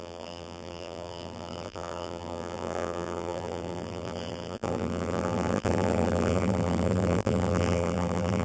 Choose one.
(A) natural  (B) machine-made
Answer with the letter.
B